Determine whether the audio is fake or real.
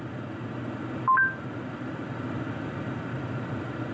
real